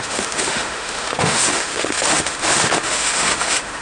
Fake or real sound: fake